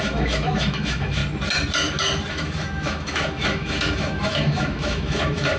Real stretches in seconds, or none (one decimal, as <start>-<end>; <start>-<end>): 1.2-2.3